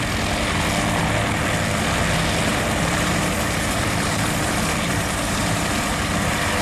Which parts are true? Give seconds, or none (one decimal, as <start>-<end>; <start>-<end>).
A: 0.0-2.5